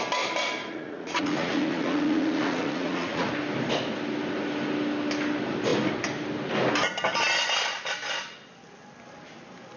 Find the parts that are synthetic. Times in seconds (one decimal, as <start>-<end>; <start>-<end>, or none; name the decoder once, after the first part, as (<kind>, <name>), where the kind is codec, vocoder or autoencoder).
0.6-3.3 (vocoder, Vocos)